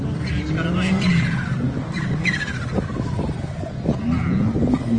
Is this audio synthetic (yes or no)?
no